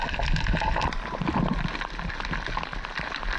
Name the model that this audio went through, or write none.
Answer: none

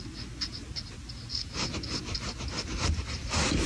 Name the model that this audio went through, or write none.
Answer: none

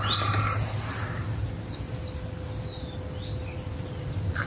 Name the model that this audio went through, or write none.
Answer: none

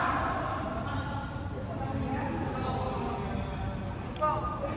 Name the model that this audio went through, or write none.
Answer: none